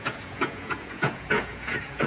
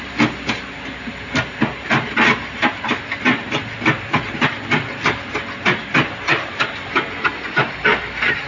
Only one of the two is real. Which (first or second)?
second